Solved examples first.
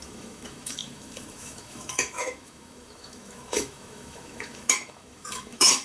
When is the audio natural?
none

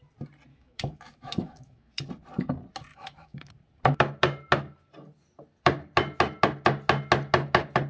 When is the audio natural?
0.0-0.5; 2.1-2.9; 3.5-7.9

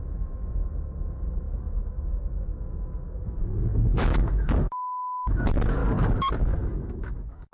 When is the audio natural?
0.7-1.4; 5.8-6.4